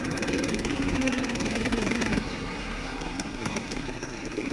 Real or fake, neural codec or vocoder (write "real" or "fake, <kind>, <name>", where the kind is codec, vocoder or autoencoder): fake, codec, SNAC